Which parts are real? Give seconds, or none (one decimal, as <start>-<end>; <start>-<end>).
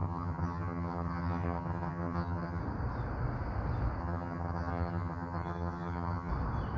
2.6-4.0; 6.3-6.8